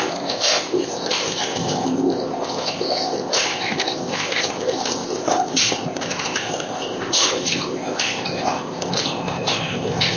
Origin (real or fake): fake